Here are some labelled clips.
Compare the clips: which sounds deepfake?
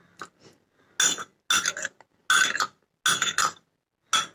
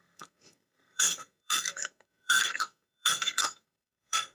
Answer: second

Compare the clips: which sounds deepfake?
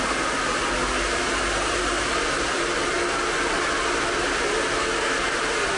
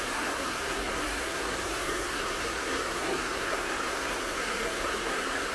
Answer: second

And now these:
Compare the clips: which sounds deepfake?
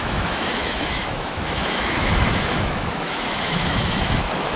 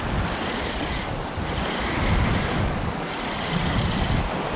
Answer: first